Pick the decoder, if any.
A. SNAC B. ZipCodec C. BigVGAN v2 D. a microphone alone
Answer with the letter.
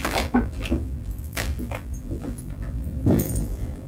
C